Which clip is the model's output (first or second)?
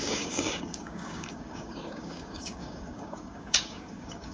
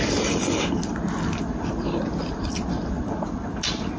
first